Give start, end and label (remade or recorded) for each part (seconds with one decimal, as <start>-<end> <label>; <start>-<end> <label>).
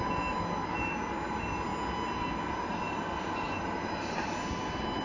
0.0-5.0 recorded